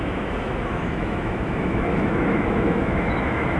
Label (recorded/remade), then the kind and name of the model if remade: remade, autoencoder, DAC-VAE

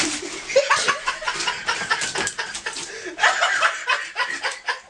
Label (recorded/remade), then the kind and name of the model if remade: remade, vocoder, BigVGAN v2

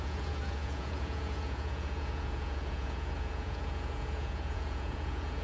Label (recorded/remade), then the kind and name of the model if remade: remade, vocoder, Vocos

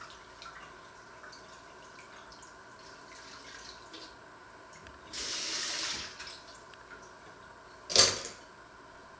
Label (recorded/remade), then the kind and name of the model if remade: recorded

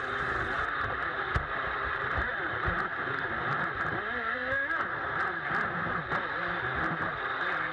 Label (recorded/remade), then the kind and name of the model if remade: recorded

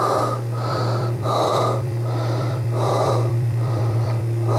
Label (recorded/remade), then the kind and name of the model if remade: remade, vocoder, BigVGAN v2